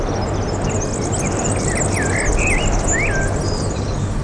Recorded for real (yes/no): yes